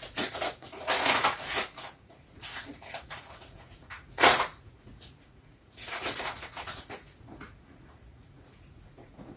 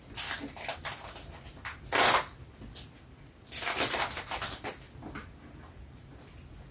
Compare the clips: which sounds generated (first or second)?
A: first